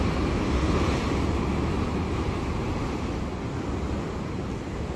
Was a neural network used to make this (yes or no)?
no